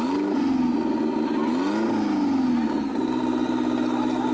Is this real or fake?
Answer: real